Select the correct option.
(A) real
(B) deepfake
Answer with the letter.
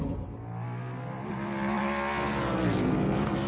A